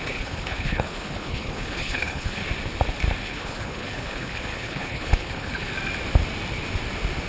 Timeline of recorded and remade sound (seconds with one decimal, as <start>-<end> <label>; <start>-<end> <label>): 0.0-2.4 remade; 2.4-3.2 recorded; 3.2-5.7 remade; 5.7-7.3 recorded